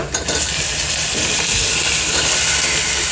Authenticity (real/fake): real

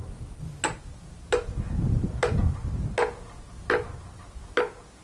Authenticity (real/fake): real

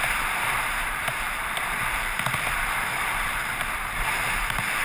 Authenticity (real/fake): fake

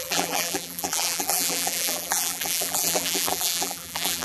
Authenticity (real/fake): fake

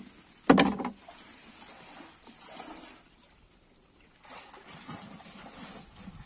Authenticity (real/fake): real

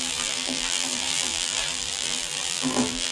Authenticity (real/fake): fake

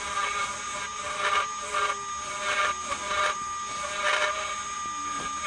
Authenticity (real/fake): real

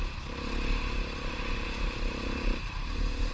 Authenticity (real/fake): fake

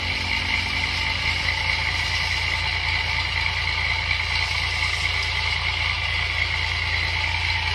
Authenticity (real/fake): real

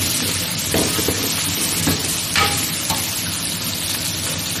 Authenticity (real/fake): real